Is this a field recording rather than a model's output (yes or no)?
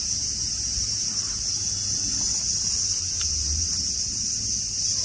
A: yes